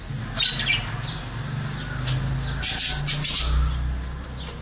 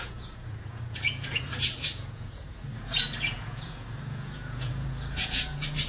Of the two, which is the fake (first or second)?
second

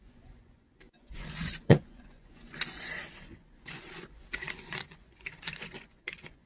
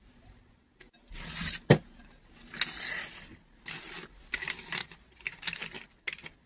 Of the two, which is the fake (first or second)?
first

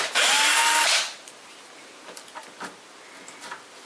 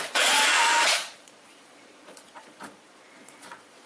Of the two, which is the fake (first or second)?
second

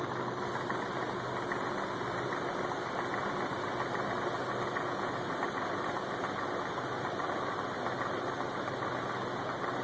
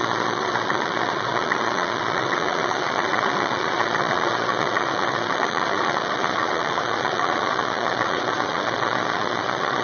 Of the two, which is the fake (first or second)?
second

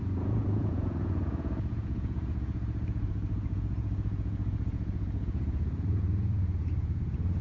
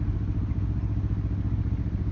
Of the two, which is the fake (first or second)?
first